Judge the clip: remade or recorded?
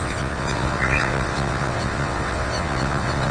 remade